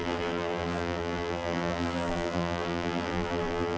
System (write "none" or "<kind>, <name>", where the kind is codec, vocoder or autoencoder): vocoder, BigVGAN v2